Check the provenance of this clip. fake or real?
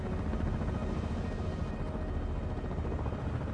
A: real